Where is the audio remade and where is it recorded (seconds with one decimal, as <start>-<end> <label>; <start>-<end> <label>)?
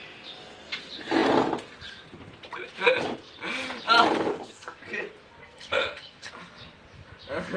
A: 0.0-4.3 recorded; 4.3-4.8 remade; 4.8-5.4 recorded; 5.4-6.3 remade; 6.3-7.6 recorded